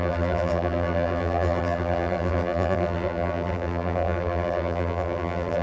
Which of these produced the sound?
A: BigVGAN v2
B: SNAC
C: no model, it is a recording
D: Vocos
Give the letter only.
A